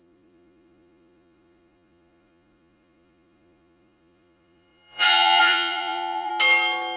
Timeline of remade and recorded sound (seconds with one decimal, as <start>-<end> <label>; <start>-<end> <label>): 0.0-6.3 remade; 6.3-7.0 recorded